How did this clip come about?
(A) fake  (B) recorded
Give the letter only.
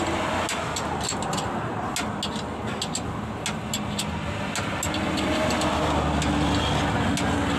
B